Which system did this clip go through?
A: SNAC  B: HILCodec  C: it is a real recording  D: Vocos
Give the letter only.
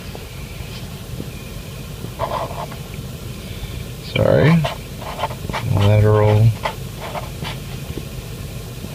C